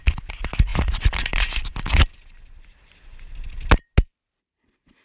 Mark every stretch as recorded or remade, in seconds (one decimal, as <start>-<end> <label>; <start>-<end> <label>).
0.0-5.0 recorded